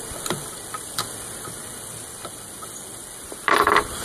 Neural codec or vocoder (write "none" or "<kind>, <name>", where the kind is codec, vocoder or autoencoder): vocoder, BigVGAN v2